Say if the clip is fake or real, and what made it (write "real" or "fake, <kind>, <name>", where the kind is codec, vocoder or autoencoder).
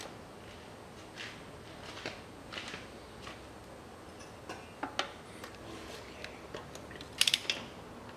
real